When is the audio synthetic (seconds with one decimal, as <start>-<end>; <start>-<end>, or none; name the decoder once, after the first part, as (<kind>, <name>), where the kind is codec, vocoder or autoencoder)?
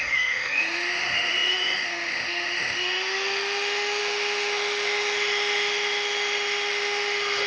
0.0-7.5 (autoencoder, DAC-VAE)